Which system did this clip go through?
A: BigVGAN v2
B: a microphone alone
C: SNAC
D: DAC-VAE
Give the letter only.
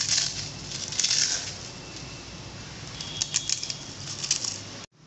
B